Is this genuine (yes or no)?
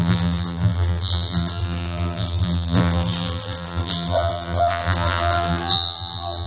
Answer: no